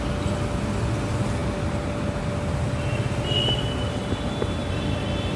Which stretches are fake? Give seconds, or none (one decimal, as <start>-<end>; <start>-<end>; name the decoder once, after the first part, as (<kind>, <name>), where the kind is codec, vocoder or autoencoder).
none